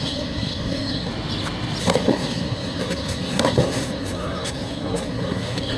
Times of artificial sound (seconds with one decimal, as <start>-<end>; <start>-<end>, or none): 0.0-1.1; 1.8-5.8